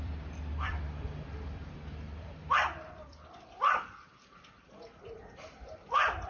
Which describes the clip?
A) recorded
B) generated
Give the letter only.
B